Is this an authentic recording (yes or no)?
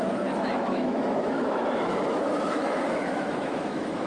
no